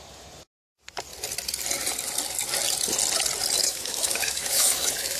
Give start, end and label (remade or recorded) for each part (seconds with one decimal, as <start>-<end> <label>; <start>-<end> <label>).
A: 0.0-3.6 recorded; 3.6-5.2 remade